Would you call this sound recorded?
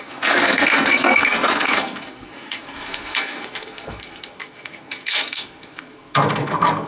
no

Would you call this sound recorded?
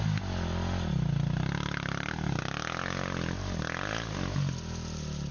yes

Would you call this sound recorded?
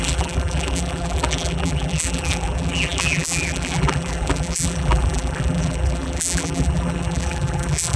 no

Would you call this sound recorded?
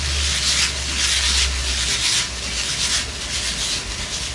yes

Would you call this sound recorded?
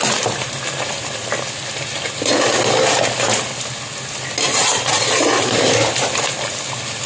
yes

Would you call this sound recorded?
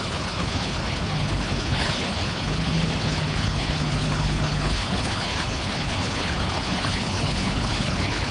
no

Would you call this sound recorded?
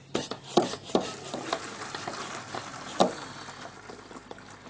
yes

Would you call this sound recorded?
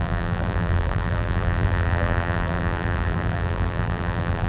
no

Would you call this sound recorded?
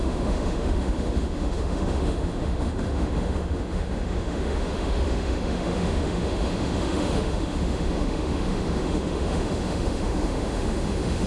no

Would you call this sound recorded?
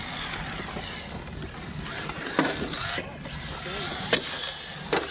yes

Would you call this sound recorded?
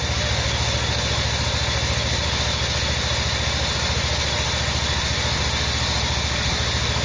yes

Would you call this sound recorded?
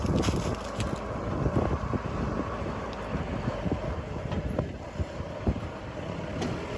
yes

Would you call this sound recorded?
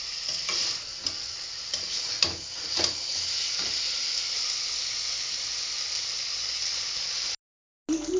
yes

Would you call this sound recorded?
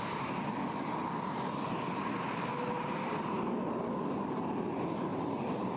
yes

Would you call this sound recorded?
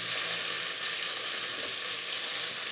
yes